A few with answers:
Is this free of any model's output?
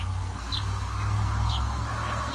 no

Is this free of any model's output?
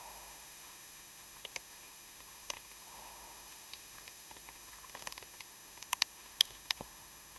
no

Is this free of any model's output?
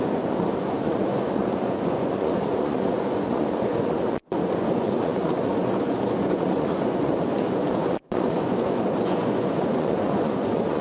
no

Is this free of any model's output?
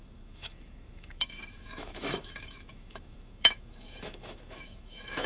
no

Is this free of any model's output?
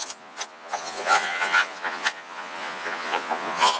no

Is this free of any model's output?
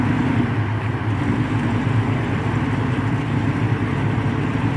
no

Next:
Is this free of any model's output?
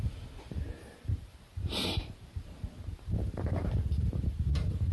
no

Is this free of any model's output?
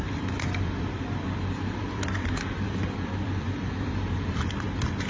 no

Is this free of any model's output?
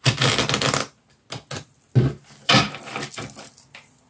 yes